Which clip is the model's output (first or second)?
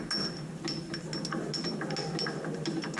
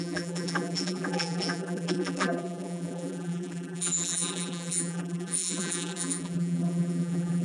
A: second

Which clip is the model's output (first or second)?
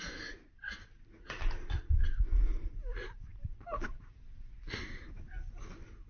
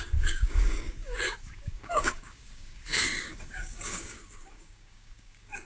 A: second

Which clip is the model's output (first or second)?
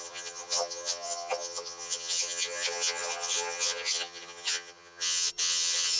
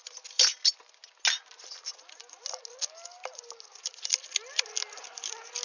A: first